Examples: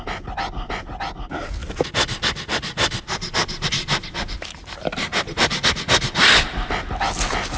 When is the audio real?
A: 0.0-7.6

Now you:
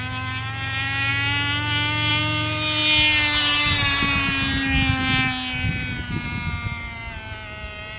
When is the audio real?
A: 0.0-8.0

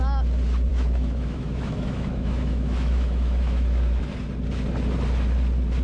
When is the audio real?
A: 0.0-0.7; 4.0-5.8